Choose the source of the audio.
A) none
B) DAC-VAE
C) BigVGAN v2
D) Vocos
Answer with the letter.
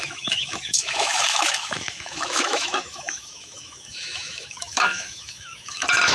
B